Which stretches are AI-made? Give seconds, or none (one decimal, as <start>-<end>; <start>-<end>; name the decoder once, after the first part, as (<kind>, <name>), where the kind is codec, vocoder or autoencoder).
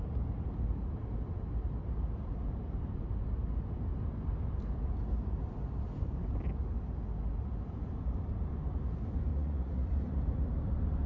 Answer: 9.3-9.9 (vocoder, Vocos)